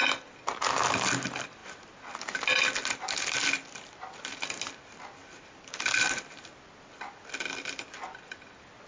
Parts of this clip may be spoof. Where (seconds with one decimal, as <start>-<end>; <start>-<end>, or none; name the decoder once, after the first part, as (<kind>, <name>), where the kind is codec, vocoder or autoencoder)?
none